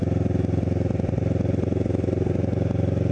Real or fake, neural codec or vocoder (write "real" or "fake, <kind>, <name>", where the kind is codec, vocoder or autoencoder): real